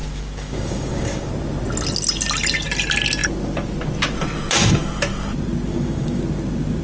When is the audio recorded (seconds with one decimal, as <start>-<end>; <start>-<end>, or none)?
1.3-5.7; 6.2-6.8